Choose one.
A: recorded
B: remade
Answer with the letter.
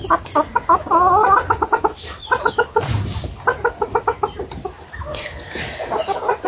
A